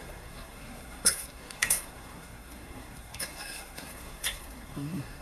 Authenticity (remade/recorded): remade